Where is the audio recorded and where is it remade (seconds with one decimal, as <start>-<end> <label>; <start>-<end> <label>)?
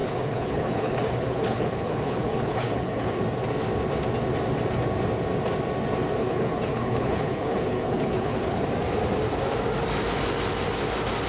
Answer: 0.0-3.2 remade; 3.2-6.2 recorded; 6.2-8.6 remade; 8.6-11.3 recorded